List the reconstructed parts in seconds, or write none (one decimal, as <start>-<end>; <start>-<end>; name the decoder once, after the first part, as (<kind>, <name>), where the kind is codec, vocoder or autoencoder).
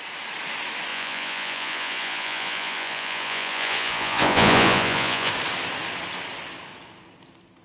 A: 0.9-5.3 (vocoder, Vocos)